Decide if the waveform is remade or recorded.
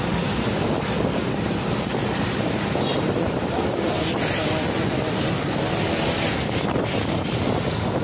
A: recorded